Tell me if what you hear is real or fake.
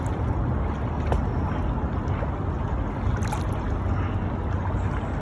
real